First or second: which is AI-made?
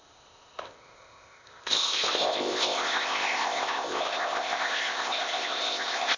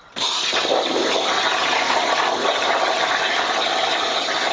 first